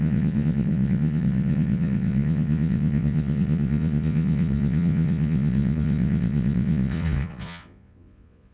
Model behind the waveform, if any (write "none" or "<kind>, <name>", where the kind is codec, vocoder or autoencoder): vocoder, Vocos